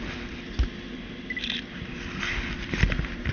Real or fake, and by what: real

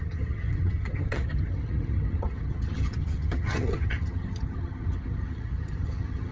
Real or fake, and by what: fake, vocoder, HiFi-GAN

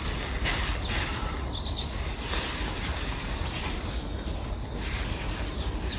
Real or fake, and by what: real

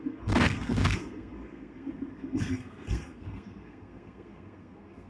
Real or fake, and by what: fake, codec, SNAC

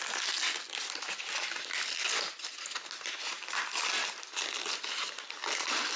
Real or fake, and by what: real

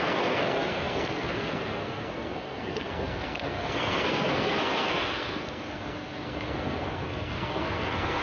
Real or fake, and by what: fake, codec, SNAC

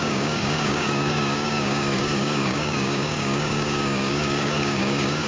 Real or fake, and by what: fake, codec, DAC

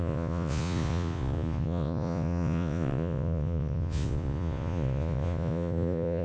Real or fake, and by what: fake, vocoder, Vocos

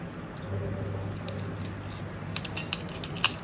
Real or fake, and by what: real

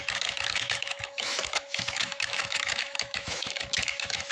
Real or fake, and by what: fake, autoencoder, DAC-VAE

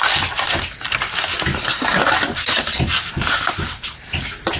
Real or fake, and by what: fake, vocoder, BigVGAN v2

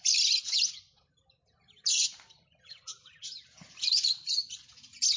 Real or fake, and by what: real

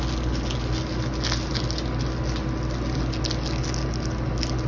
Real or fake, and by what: real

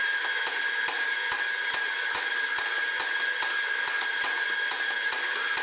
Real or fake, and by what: real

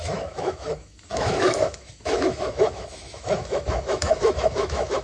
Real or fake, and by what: fake, autoencoder, DAC-VAE